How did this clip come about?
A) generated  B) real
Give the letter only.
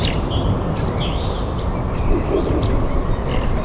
B